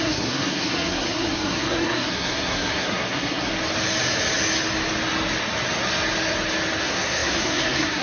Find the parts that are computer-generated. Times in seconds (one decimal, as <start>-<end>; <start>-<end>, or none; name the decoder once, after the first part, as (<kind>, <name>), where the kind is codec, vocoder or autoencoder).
0.0-3.5 (codec, SNAC); 6.8-8.0